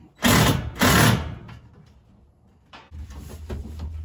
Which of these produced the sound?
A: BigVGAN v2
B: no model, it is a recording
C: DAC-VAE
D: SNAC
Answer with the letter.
B